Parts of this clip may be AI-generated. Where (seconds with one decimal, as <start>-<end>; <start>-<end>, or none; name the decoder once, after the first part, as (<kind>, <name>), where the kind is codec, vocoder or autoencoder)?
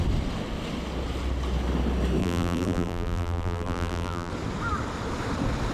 2.2-4.3 (vocoder, BigVGAN v2)